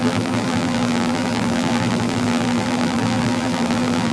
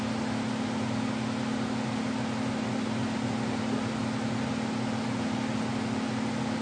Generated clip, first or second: first